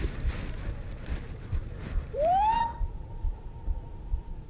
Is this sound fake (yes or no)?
yes